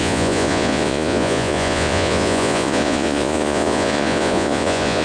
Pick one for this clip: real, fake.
fake